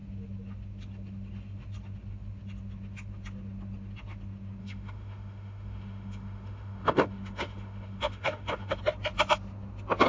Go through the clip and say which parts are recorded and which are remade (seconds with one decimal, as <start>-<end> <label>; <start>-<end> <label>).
0.0-4.6 recorded; 4.6-8.8 remade; 8.8-10.1 recorded